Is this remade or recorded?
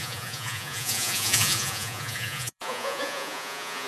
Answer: remade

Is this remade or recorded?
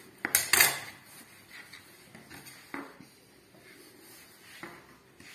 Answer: recorded